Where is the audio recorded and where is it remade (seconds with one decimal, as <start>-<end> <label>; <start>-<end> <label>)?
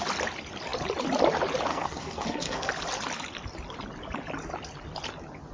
0.0-1.7 recorded; 1.7-2.7 remade; 2.7-5.5 recorded